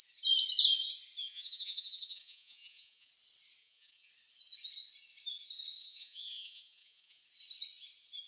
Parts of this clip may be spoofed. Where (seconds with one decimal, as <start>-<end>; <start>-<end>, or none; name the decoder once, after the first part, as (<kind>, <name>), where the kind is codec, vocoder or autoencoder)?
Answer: 1.2-3.1 (vocoder, Vocos); 3.6-4.1; 5.8-7.2